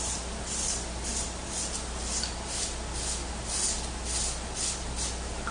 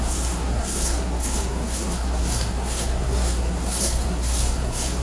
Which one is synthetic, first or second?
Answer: second